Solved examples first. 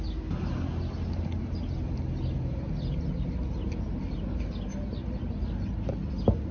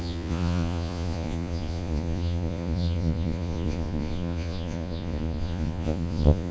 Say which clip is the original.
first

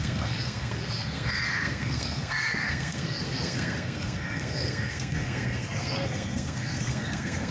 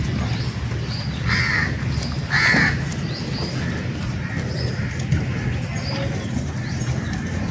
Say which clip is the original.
second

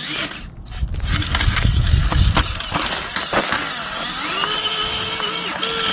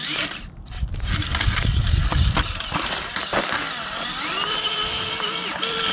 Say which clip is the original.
first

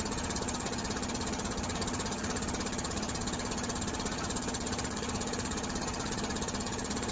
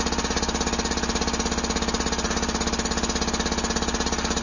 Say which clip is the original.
second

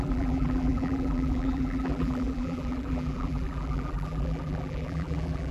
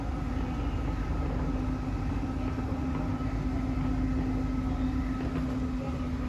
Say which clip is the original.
second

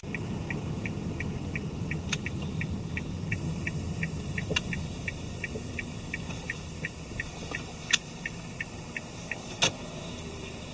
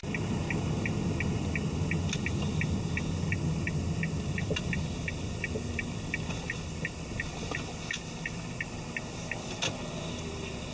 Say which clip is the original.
second